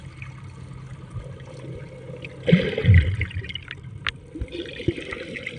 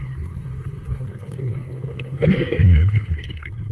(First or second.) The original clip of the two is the first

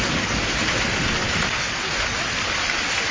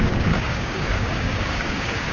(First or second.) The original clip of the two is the first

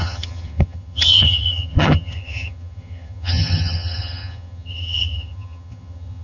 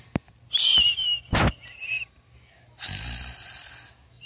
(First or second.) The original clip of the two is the second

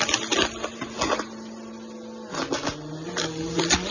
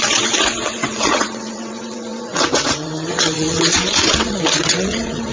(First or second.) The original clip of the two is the first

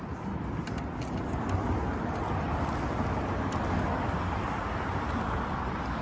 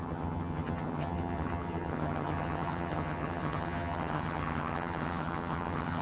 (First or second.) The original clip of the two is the first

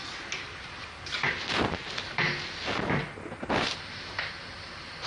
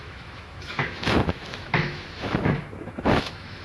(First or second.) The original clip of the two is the first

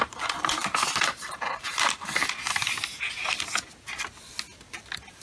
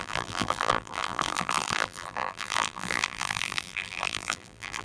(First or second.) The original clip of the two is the first